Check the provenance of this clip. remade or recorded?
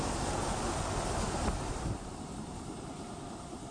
recorded